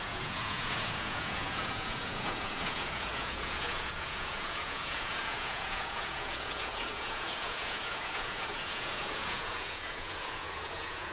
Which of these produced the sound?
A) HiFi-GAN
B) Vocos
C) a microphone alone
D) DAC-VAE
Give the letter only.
B